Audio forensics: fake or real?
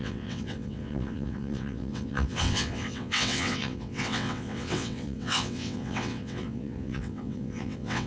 fake